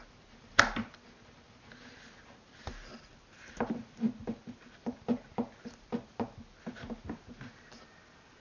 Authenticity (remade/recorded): recorded